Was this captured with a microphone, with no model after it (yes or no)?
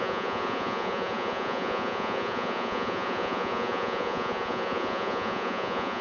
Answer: no